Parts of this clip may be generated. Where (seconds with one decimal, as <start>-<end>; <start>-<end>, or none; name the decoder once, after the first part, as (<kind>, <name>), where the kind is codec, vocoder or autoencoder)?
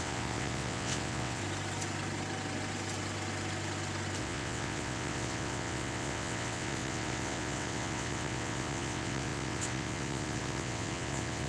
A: 0.0-1.4 (vocoder, WaveNeXt); 4.2-11.5